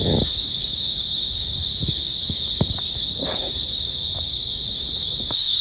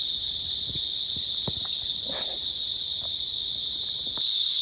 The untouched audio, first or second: second